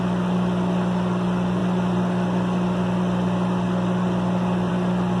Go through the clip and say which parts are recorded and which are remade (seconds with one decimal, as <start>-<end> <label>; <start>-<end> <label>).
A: 0.0-5.2 recorded

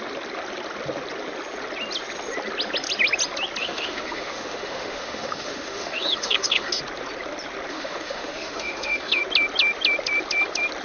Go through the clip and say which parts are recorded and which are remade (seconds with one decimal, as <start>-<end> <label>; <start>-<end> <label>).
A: 0.0-3.6 recorded; 3.6-6.7 remade; 6.7-7.7 recorded; 7.7-9.2 remade; 9.2-10.8 recorded

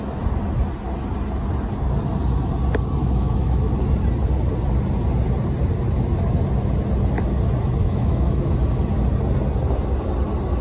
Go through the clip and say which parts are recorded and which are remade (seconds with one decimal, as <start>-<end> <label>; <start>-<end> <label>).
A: 0.0-3.0 recorded; 3.0-3.7 remade; 3.7-7.8 recorded; 7.8-8.5 remade; 8.5-10.6 recorded

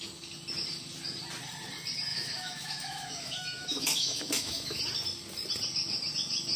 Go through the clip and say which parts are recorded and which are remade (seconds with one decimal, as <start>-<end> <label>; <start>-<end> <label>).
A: 0.0-2.1 recorded; 2.1-4.8 remade; 4.8-6.6 recorded

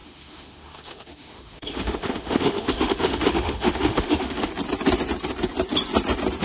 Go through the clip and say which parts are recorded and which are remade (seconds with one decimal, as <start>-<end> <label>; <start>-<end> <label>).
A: 0.0-4.5 remade; 4.5-6.4 recorded

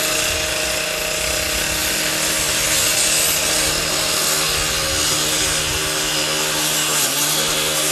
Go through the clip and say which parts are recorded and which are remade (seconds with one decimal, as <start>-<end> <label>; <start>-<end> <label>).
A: 0.0-7.9 recorded

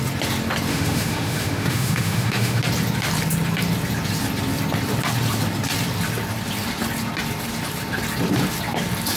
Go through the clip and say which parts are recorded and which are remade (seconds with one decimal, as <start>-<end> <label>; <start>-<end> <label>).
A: 0.0-0.7 recorded; 0.7-2.6 remade; 2.6-9.2 recorded

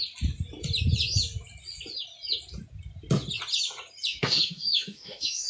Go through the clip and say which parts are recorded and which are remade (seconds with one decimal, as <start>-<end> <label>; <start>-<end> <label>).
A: 0.0-4.1 recorded; 4.1-5.5 remade